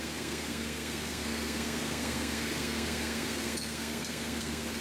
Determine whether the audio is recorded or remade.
remade